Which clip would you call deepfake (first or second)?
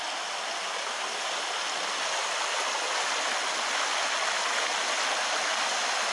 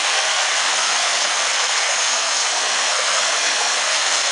second